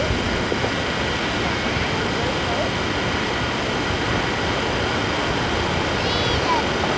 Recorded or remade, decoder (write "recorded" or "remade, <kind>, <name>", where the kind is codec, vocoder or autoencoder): recorded